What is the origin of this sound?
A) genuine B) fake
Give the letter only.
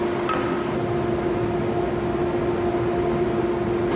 A